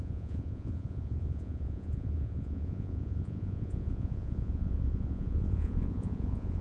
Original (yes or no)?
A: no